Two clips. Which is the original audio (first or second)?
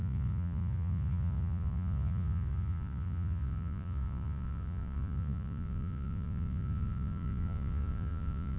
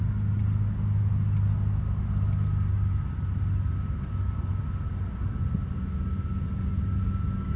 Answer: second